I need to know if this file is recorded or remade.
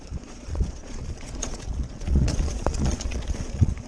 remade